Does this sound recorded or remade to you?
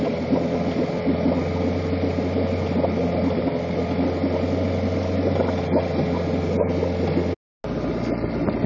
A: recorded